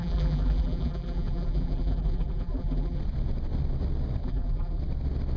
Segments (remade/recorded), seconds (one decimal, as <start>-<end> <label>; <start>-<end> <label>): 0.0-3.0 remade; 3.0-4.2 recorded; 4.2-4.8 remade; 4.8-5.4 recorded